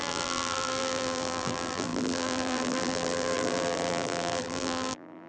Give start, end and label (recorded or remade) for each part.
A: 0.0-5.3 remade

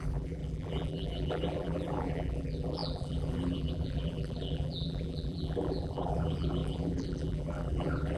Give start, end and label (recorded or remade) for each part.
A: 0.0-8.2 remade

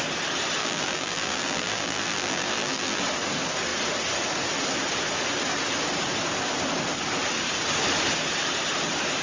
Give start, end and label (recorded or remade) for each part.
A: 0.0-0.6 recorded; 0.6-3.0 remade; 3.0-9.2 recorded

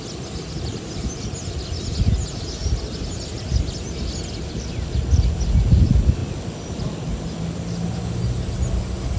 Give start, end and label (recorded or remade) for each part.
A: 0.0-9.2 recorded